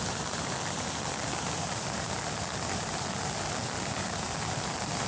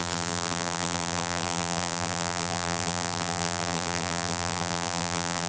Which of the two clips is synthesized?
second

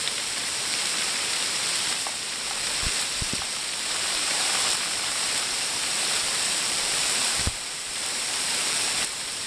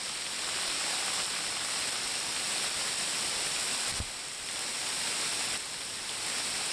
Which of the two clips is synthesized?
first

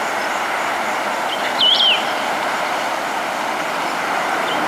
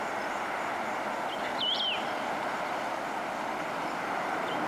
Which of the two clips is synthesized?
first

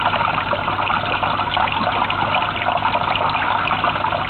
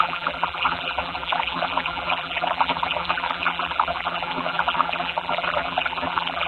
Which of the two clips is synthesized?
second